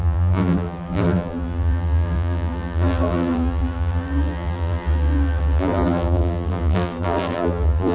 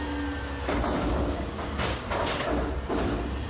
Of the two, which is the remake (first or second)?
first